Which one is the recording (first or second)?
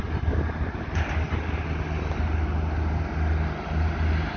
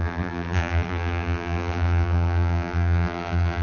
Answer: first